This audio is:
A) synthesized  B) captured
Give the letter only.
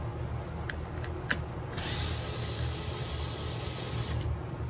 B